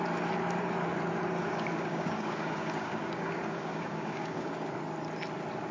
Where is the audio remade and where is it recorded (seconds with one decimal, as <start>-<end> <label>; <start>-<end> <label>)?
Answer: 0.0-1.4 recorded; 1.4-4.8 remade; 4.8-5.7 recorded